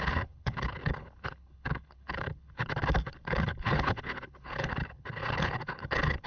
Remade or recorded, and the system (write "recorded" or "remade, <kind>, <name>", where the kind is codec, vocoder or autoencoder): remade, codec, HILCodec